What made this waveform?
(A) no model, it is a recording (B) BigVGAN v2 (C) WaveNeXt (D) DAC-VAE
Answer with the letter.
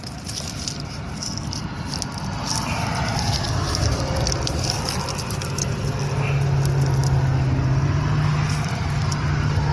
A